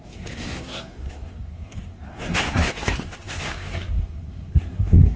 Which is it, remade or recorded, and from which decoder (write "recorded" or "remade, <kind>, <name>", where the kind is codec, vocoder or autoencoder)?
remade, codec, SNAC